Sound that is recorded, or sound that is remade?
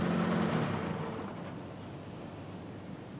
recorded